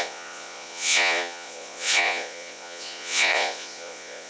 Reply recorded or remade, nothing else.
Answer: remade